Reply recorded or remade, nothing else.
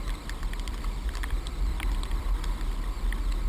recorded